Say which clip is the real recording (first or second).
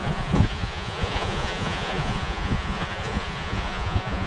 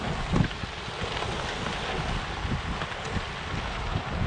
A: second